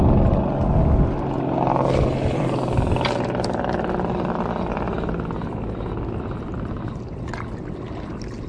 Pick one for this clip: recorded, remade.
recorded